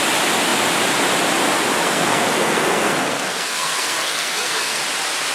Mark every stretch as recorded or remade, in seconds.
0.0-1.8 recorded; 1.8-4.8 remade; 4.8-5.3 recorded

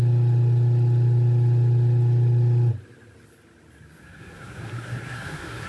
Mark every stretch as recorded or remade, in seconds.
0.0-4.0 recorded; 4.0-5.7 remade

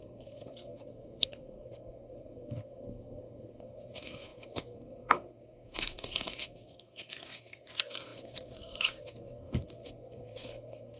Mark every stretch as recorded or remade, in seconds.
0.0-11.0 remade

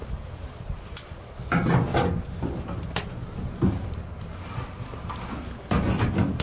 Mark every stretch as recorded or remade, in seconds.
0.0-6.4 recorded